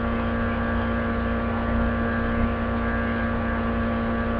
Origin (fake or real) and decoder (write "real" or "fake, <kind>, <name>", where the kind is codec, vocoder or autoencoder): real